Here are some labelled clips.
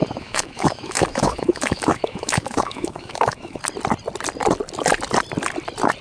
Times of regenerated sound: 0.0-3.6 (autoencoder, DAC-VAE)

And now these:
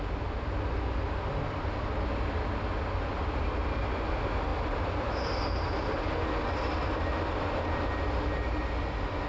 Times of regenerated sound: none

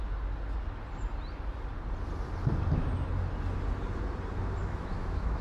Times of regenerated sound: 4.6-5.4 (autoencoder, DAC-VAE)

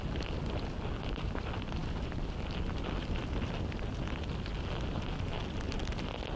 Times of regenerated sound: none

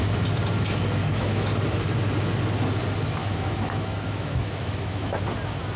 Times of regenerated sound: 1.0-1.5 (autoencoder, DAC-VAE); 3.2-5.2

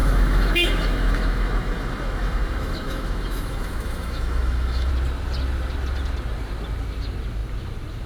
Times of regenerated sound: 0.0-4.9 (autoencoder, DAC-VAE)

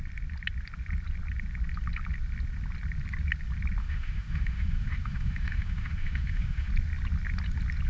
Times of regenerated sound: 3.8-6.7 (autoencoder, DAC-VAE)

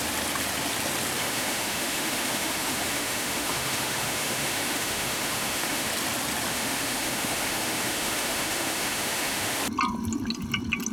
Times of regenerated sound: 1.2-5.9 (autoencoder, DAC-VAE); 6.5-9.6